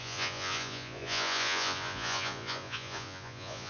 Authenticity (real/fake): fake